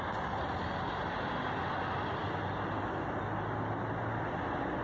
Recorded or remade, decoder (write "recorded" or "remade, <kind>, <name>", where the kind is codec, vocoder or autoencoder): recorded